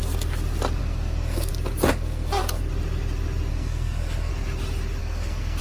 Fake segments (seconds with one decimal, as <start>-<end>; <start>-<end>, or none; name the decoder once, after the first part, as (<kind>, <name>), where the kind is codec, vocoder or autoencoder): 0.8-1.5 (codec, SNAC); 1.9-2.6; 3.5-4.3; 5.0-5.6